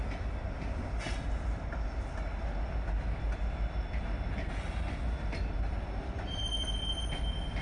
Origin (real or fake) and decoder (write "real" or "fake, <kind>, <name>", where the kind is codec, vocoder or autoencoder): real